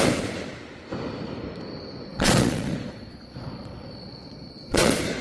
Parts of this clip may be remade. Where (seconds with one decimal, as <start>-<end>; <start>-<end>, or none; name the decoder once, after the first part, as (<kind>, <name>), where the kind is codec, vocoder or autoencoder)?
2.1-5.2 (vocoder, Vocos)